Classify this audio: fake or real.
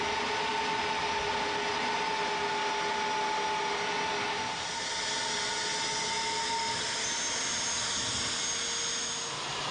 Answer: real